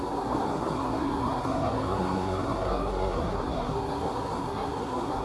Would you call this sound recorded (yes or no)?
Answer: no